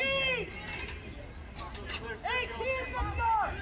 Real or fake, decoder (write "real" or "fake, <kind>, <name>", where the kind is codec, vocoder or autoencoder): real